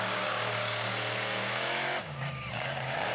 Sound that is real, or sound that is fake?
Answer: fake